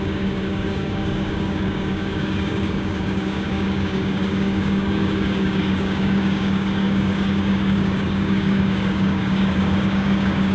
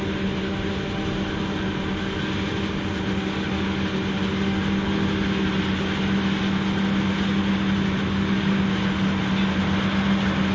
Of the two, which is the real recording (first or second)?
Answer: second